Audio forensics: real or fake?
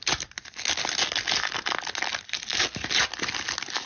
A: real